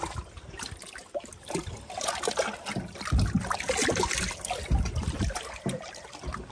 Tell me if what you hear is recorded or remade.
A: recorded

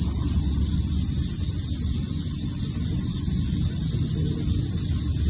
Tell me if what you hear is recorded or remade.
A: recorded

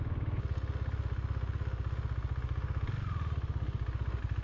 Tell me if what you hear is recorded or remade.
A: recorded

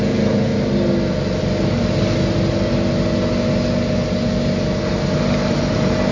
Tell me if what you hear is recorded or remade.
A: recorded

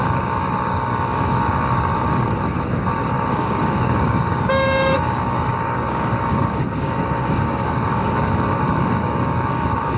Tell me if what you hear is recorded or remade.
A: remade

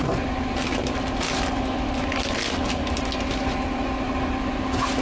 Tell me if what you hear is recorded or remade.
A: recorded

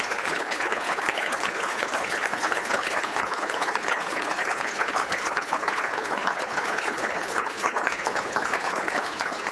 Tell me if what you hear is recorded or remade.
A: remade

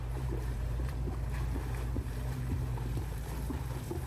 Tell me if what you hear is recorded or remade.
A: remade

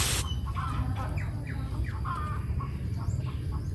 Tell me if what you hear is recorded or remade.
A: recorded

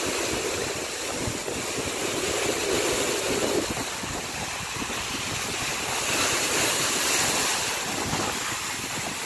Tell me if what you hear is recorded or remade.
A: recorded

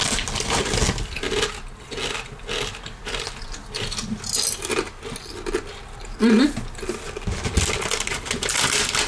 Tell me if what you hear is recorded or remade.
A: recorded